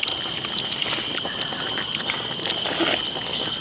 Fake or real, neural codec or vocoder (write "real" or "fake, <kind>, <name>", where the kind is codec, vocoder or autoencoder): real